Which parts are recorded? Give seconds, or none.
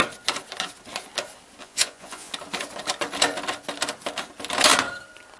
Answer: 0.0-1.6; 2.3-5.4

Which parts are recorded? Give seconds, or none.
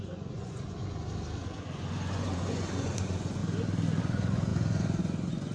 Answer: 1.0-1.6; 3.4-4.0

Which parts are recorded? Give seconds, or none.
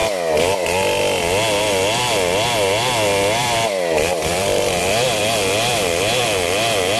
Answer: 0.0-3.4; 5.2-5.7; 6.2-7.0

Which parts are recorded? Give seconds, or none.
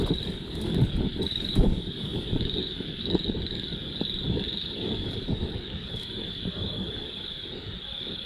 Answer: none